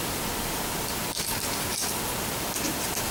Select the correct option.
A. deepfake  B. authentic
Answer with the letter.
B